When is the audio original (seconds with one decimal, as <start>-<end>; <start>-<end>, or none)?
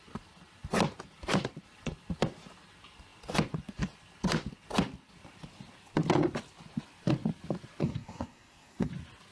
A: 0.0-7.8; 8.9-9.3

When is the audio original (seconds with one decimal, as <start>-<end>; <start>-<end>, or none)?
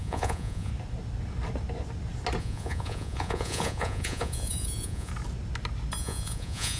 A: 0.7-2.4; 5.1-6.0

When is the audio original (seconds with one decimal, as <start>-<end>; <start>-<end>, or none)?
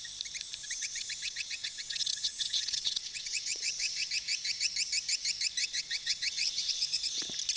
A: 0.0-0.6; 4.1-5.6; 7.0-7.6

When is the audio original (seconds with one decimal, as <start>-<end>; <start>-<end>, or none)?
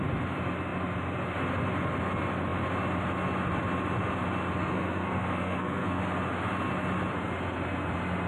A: 0.0-4.6; 6.0-8.3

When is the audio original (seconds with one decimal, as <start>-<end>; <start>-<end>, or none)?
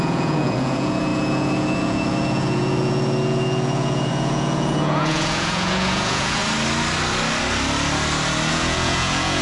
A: 6.4-8.5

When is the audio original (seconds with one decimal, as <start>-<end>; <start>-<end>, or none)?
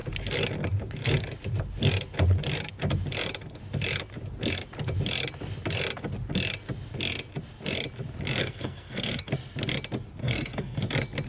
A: 0.0-8.4; 9.3-10.2; 10.8-11.3